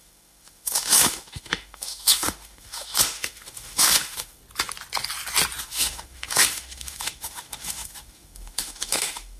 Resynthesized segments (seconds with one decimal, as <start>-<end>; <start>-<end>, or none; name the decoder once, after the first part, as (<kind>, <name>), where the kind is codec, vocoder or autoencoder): 0.0-4.4 (autoencoder, DAC-VAE); 5.6-9.4